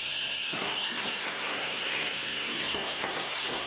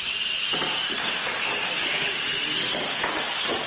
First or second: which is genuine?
second